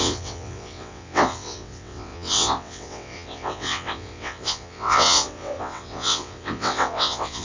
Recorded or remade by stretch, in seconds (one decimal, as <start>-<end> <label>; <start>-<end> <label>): 0.0-7.4 remade

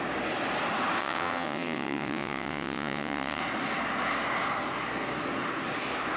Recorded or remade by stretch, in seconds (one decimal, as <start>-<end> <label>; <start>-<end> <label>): 0.0-1.0 recorded; 1.0-3.4 remade; 3.4-6.2 recorded

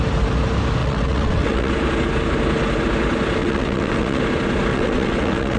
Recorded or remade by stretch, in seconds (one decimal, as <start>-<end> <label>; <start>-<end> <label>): 0.0-0.8 recorded; 0.8-1.7 remade; 1.7-3.4 recorded; 3.4-4.2 remade; 4.2-4.7 recorded; 4.7-5.6 remade

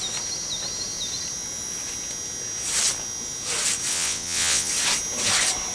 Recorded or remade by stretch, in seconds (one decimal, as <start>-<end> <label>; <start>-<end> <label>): 0.0-3.9 recorded; 3.9-4.7 remade; 4.7-5.7 recorded

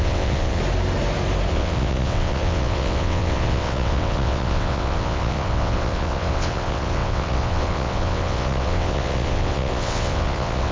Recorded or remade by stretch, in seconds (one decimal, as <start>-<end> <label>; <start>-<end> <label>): 0.0-0.6 remade; 0.6-1.5 recorded; 1.5-10.7 remade